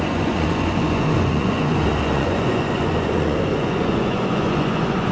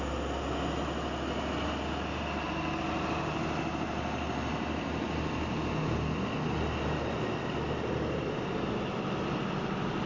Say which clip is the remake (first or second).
first